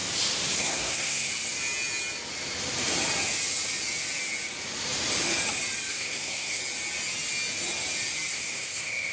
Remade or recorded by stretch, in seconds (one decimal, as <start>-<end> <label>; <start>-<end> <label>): 0.0-0.6 recorded; 0.6-1.3 remade; 1.3-5.9 recorded; 5.9-6.6 remade; 6.6-8.3 recorded; 8.3-9.1 remade